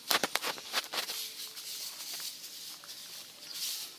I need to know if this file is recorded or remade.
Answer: recorded